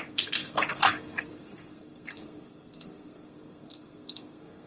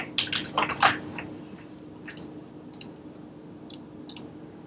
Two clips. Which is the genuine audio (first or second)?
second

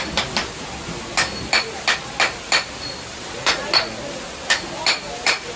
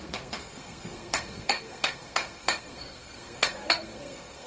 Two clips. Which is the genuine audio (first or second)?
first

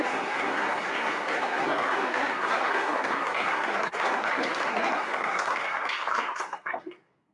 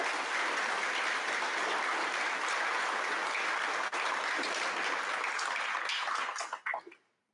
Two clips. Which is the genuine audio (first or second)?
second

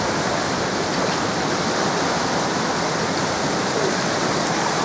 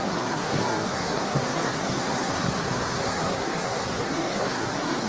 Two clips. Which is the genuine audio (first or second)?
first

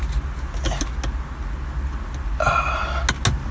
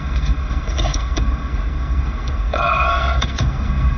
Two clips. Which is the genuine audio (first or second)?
first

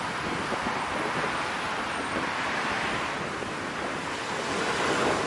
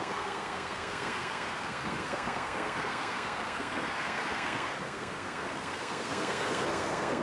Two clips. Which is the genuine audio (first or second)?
first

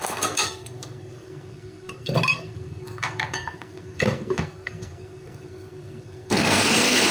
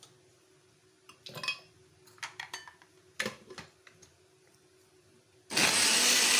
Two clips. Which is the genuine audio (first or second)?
second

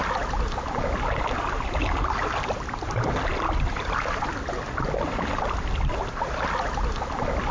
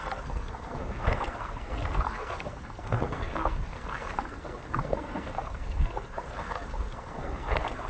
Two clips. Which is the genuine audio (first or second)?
first